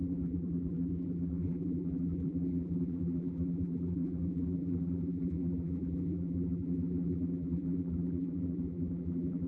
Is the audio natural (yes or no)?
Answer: no